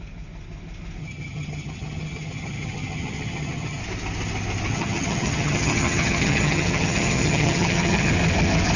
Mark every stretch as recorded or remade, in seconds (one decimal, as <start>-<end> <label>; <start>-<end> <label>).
0.0-1.0 recorded; 1.0-3.8 remade; 3.8-4.7 recorded; 4.7-8.1 remade; 8.1-8.8 recorded